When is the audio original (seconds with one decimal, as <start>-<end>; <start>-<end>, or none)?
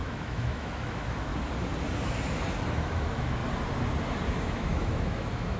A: 1.3-2.7; 3.4-4.3